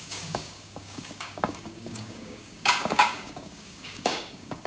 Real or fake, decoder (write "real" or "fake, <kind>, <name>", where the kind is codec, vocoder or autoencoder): fake, codec, DAC